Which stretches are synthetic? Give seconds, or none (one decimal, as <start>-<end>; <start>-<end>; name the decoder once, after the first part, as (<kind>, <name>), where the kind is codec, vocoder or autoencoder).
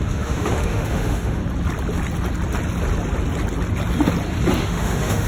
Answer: 0.0-1.4 (autoencoder, DAC-VAE); 4.6-5.3